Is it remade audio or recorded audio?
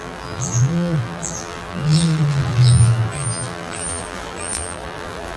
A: remade